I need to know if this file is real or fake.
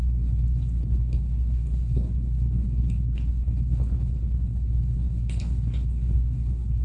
fake